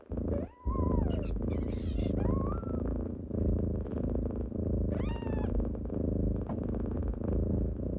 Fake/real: real